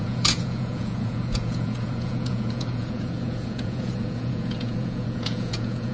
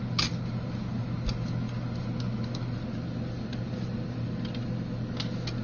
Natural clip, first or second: second